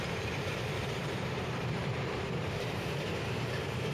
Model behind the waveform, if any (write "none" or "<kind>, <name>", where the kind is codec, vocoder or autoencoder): vocoder, BigVGAN v2